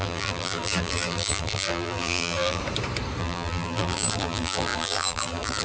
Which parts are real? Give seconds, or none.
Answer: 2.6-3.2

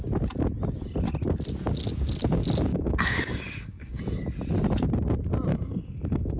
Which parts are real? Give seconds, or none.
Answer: 0.0-2.7; 4.0-5.5

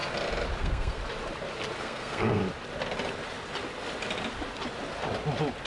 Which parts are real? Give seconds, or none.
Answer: 0.0-0.6; 1.0-1.8; 2.4-5.7

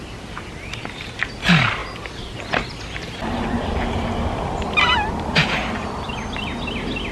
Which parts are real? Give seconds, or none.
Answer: 0.0-7.1

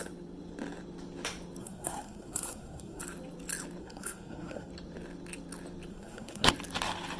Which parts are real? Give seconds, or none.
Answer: 0.0-1.6; 3.0-3.8; 4.7-5.9; 6.5-7.2

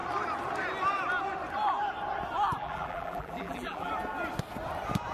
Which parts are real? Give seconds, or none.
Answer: 0.0-2.6; 3.9-5.1

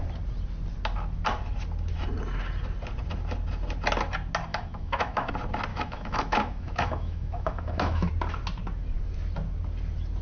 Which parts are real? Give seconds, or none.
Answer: 0.0-4.5; 5.3-5.7; 8.1-10.2

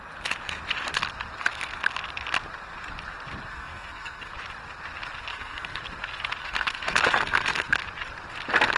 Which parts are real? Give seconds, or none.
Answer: 0.0-3.5; 4.3-5.3; 5.8-6.4; 7.7-8.8